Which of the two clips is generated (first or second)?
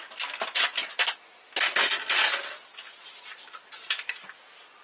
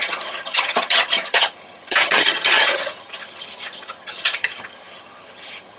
second